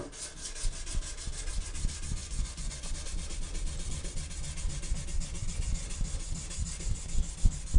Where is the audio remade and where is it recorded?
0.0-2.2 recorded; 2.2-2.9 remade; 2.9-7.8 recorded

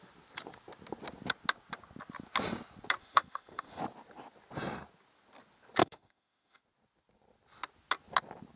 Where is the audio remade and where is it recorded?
0.0-3.0 recorded; 3.0-3.8 remade; 3.8-5.8 recorded; 5.8-6.6 remade; 6.6-8.6 recorded

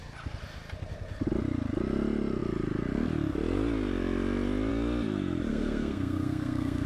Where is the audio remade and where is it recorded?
0.0-5.5 recorded; 5.5-6.9 remade

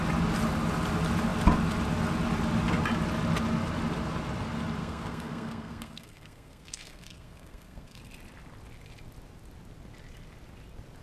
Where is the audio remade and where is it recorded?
0.0-4.8 recorded; 4.8-8.0 remade; 8.0-11.0 recorded